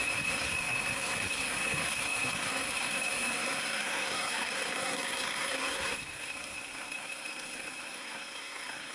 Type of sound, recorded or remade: remade